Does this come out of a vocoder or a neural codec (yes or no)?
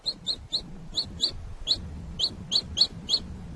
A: no